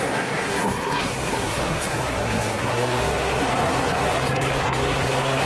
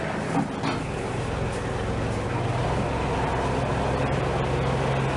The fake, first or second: first